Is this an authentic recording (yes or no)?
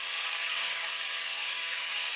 no